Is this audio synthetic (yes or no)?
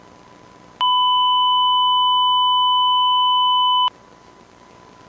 no